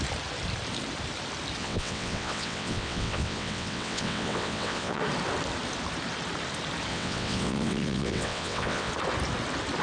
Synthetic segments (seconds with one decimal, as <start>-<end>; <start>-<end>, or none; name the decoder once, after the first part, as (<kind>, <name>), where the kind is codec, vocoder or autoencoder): 1.6-5.0 (vocoder, WaveNeXt); 6.9-8.9